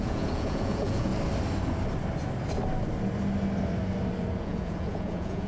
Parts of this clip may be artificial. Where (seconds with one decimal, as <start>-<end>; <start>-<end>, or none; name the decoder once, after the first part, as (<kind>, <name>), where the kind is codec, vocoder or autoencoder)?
0.0-1.1 (vocoder, Vocos); 4.4-5.5